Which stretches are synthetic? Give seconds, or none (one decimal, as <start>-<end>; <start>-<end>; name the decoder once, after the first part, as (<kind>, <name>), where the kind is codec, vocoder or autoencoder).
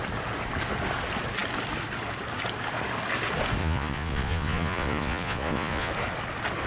3.6-5.9 (vocoder, Vocos)